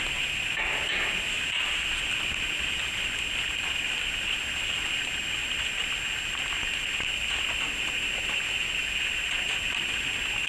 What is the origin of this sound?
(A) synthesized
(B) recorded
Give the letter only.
B